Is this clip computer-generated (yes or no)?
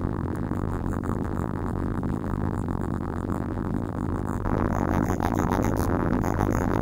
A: yes